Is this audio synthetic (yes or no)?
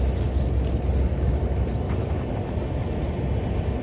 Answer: no